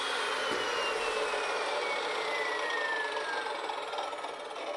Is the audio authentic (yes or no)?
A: yes